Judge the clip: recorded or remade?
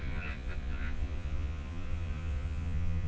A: remade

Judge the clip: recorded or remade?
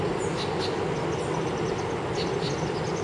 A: recorded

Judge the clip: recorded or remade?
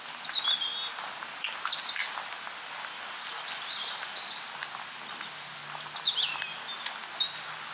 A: recorded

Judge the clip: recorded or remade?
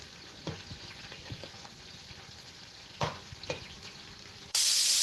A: remade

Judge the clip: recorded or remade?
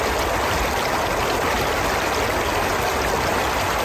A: recorded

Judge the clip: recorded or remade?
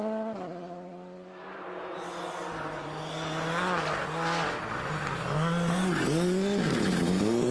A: recorded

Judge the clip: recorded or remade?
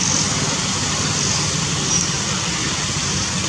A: recorded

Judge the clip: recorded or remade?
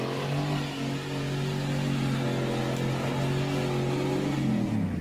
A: recorded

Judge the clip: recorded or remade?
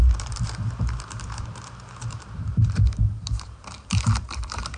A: remade